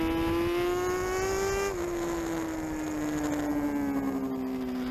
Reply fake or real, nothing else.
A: real